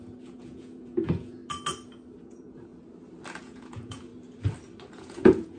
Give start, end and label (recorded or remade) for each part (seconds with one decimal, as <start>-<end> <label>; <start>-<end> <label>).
0.0-1.4 remade; 1.4-2.2 recorded; 2.2-2.7 remade; 2.7-3.4 recorded; 3.4-4.1 remade; 4.1-4.9 recorded; 4.9-5.6 remade